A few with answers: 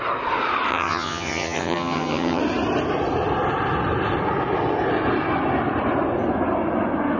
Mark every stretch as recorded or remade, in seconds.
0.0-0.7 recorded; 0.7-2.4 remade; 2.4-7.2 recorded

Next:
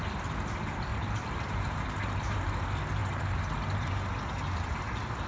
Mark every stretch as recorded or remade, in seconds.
0.0-0.9 recorded; 0.9-2.5 remade; 2.5-5.3 recorded

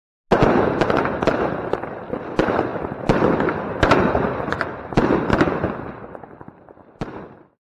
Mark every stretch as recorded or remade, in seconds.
0.0-7.8 recorded